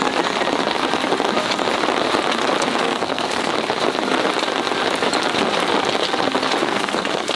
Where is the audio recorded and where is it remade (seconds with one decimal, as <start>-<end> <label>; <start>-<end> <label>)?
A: 0.0-2.8 recorded; 2.8-3.5 remade; 3.5-6.6 recorded; 6.6-7.4 remade